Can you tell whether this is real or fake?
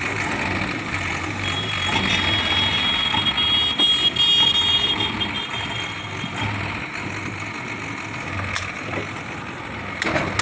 real